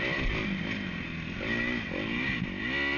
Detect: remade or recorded recorded